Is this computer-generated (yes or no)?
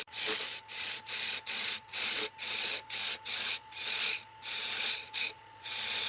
yes